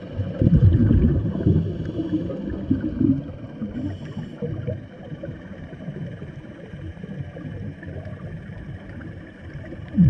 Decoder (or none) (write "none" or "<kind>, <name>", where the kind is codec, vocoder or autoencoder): vocoder, BigVGAN v2